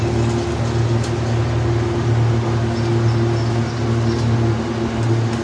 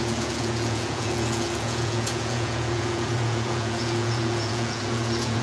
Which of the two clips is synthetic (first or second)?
second